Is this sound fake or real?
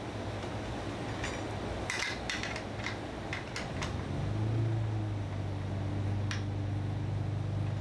real